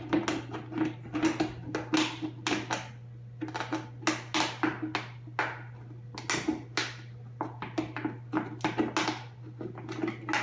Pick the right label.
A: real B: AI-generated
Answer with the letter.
A